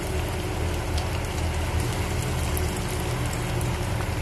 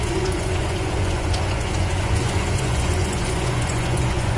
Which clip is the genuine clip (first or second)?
first